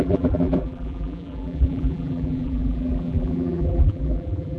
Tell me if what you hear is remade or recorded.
remade